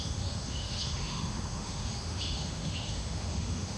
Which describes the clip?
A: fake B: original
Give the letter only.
A